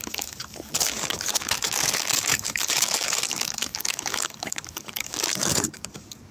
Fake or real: fake